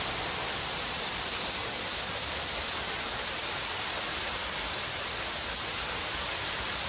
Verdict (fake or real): real